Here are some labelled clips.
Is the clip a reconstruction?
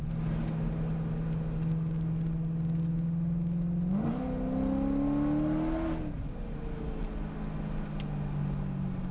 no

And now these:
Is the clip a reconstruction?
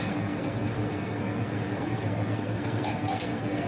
yes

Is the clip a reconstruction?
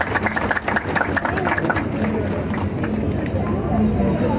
no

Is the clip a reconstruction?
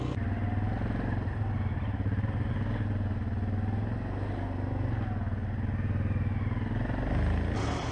no